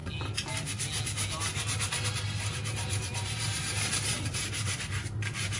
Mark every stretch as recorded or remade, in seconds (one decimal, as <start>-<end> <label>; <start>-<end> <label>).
0.0-2.4 recorded; 2.4-5.6 remade